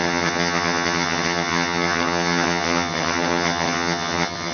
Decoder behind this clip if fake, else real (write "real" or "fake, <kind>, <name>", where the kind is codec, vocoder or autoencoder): fake, vocoder, HiFi-GAN